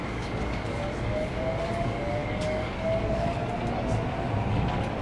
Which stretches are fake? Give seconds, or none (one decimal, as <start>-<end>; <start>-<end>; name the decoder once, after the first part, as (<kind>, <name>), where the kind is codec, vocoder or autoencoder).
0.0-3.5 (codec, DAC); 4.5-5.0